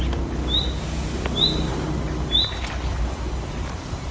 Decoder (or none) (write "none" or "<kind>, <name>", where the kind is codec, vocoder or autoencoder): none